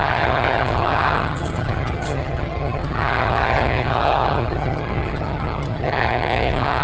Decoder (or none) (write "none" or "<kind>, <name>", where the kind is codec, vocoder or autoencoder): vocoder, HiFi-GAN